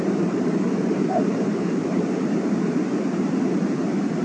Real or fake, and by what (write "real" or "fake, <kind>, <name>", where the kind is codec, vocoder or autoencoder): fake, vocoder, BigVGAN v2